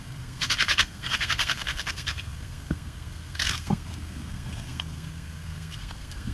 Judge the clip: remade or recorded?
remade